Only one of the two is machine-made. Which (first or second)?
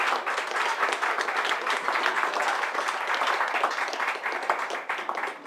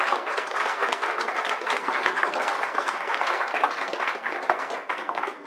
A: second